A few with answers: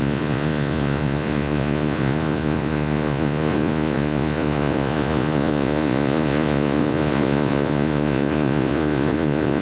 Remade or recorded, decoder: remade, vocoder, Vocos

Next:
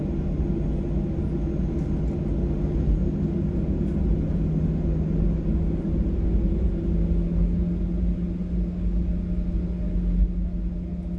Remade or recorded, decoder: recorded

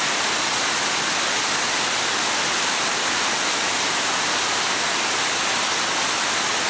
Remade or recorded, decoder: recorded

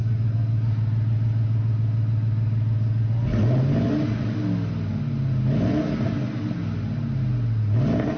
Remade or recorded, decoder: recorded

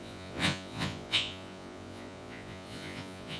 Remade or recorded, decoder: remade, vocoder, Vocos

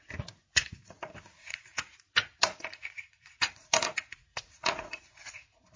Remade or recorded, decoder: remade, vocoder, Vocos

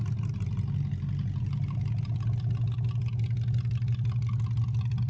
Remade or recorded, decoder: recorded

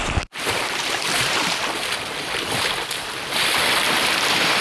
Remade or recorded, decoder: recorded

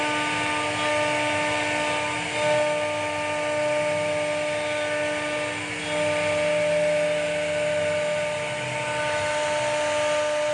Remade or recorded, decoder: recorded